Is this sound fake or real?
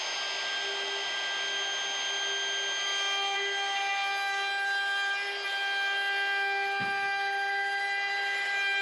real